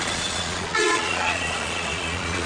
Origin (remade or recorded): remade